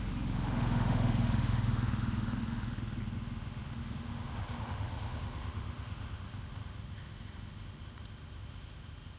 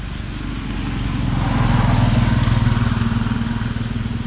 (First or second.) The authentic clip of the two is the second